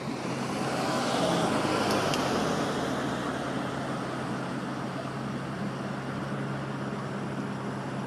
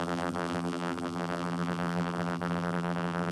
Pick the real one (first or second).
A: first